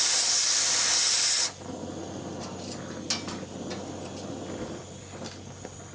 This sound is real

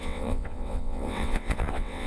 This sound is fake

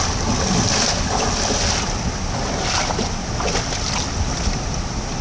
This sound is real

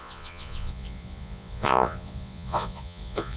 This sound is fake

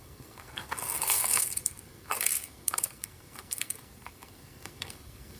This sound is fake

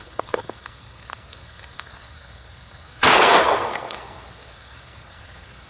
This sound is fake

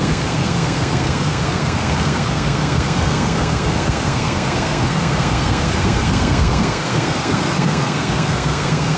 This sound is fake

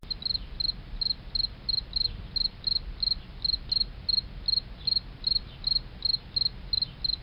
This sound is real